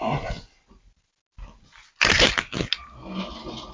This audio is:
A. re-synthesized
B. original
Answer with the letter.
B